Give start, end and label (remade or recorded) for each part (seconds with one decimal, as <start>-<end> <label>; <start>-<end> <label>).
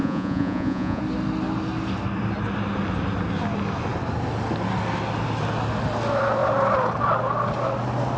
0.0-1.0 remade; 1.0-8.2 recorded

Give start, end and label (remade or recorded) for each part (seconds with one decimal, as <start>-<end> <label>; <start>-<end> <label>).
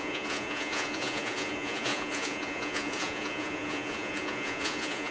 0.0-5.1 remade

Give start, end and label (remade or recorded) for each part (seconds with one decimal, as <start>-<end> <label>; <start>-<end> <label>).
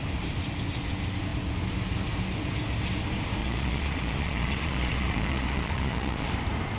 0.0-3.4 recorded; 3.4-6.3 remade; 6.3-6.8 recorded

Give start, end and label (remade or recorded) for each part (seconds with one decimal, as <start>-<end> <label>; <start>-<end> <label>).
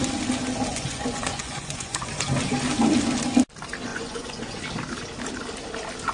0.0-0.7 recorded; 0.7-2.1 remade; 2.1-3.9 recorded; 3.9-4.6 remade; 4.6-6.1 recorded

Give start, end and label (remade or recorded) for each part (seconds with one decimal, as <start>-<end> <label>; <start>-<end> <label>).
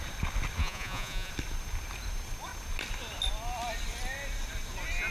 0.0-0.6 recorded; 0.6-1.3 remade; 1.3-5.1 recorded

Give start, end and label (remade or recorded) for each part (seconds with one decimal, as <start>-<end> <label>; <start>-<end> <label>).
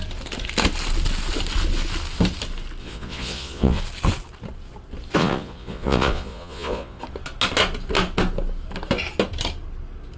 0.0-2.8 recorded; 2.8-3.8 remade; 3.8-5.2 recorded; 5.2-7.0 remade; 7.0-10.2 recorded